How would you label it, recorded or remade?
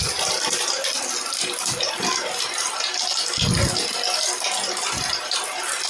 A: recorded